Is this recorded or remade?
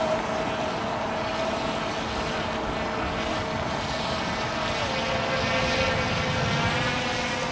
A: recorded